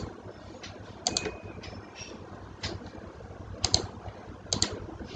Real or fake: real